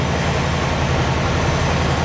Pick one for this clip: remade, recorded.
recorded